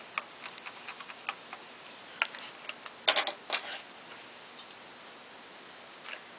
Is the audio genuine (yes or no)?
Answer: yes